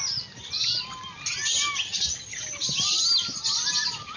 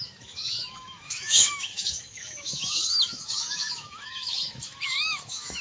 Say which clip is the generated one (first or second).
second